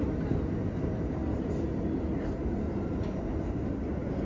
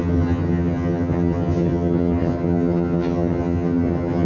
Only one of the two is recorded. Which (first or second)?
first